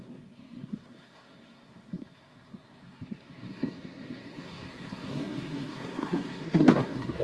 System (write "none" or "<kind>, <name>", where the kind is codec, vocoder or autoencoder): codec, SNAC